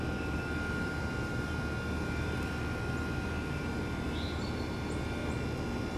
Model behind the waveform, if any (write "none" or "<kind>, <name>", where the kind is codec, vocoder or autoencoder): none